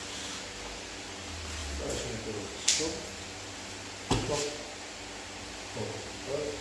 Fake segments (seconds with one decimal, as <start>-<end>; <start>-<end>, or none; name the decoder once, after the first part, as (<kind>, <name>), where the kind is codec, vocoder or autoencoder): none

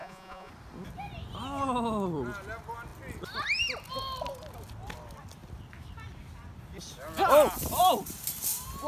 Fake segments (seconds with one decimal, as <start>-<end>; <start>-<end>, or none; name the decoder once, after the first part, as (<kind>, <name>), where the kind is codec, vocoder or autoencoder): 0.0-0.5 (vocoder, Vocos)

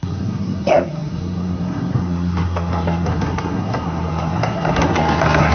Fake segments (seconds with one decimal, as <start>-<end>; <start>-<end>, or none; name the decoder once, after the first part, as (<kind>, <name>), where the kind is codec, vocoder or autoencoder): 0.0-5.5 (codec, SNAC)

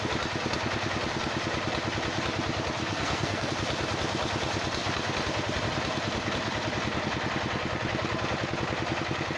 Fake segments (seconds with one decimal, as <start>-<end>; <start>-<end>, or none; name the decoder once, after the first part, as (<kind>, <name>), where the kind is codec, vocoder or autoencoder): 2.8-3.5 (codec, SNAC)